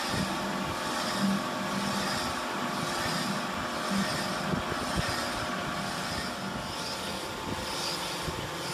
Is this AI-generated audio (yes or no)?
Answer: no